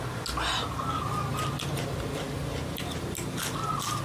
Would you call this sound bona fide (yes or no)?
yes